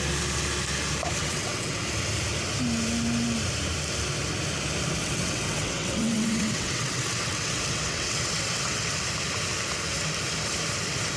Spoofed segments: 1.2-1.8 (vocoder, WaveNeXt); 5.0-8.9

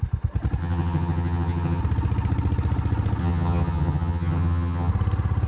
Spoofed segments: 0.6-1.8 (vocoder, HiFi-GAN); 3.2-4.9

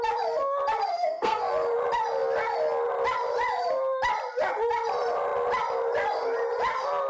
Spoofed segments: 0.9-1.5 (codec, SNAC)

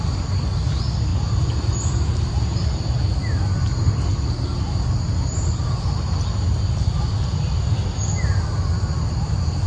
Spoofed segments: none

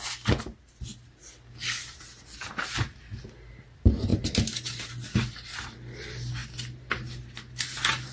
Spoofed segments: none

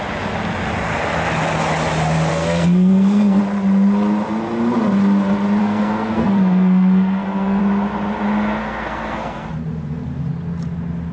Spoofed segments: 2.3-3.4 (codec, SNAC); 5.6-7.6; 8.6-9.5

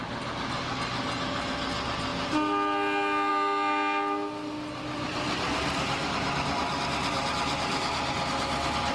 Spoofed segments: none